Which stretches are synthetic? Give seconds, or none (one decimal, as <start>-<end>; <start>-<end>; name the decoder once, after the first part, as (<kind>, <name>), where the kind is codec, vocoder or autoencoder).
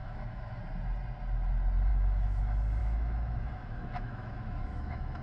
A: 0.0-0.6 (autoencoder, DAC-VAE); 1.9-2.4; 2.8-5.2